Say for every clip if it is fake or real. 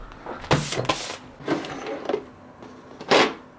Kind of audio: real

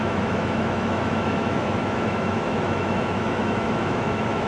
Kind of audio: fake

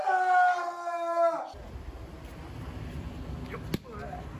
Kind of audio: real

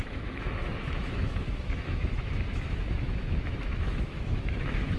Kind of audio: fake